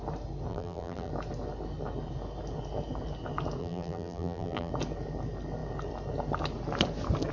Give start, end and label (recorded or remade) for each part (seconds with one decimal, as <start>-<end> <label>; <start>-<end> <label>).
0.0-0.5 recorded; 0.5-1.1 remade; 1.1-3.6 recorded; 3.6-4.7 remade; 4.7-7.3 recorded